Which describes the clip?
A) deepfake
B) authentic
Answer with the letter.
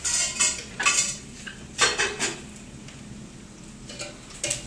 B